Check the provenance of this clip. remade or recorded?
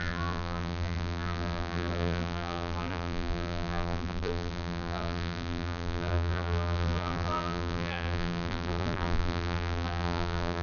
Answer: remade